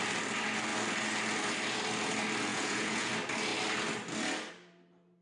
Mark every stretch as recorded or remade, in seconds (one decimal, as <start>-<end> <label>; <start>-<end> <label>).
0.0-2.5 recorded; 2.5-3.1 remade; 3.1-5.2 recorded